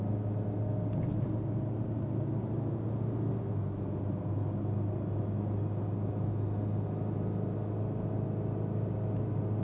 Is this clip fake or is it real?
real